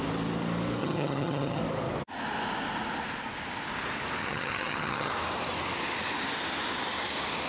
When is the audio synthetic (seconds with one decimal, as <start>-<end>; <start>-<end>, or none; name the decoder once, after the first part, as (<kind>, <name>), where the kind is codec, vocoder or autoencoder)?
0.8-1.6 (vocoder, HiFi-GAN); 4.2-5.1

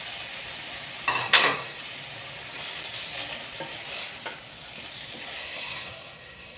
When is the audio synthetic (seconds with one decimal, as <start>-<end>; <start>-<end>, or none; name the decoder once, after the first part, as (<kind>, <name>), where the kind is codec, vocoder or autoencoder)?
1.2-1.8 (codec, SNAC); 5.4-6.6